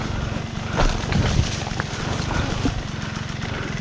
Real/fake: real